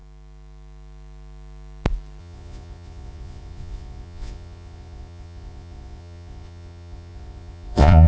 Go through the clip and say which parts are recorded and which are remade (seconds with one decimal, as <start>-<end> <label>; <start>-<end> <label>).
0.0-2.2 recorded; 2.2-8.1 remade